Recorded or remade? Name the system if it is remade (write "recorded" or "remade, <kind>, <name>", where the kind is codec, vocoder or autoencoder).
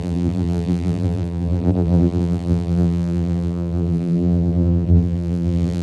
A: remade, vocoder, BigVGAN v2